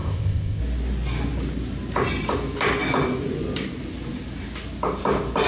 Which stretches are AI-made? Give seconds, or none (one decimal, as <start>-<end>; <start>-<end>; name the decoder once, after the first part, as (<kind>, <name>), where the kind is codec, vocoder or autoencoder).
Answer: 0.0-0.6 (codec, ZipCodec)